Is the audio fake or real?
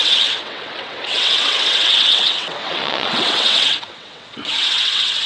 fake